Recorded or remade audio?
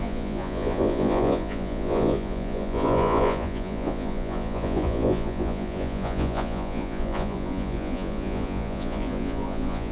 remade